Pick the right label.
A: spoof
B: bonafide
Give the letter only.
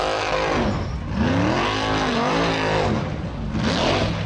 B